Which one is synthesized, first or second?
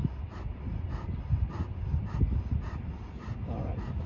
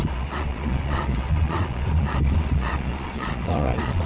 second